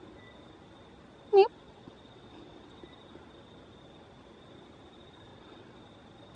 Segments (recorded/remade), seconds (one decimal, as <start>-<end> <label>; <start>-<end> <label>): 0.0-1.5 recorded; 1.5-2.8 remade; 2.8-5.3 recorded; 5.3-5.8 remade; 5.8-6.4 recorded